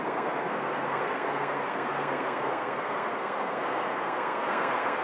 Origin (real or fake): fake